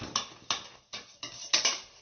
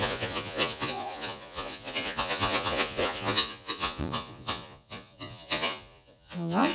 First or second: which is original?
first